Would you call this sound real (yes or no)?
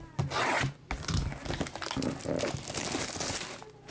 yes